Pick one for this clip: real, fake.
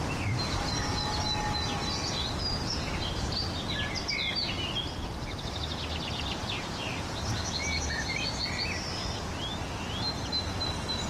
real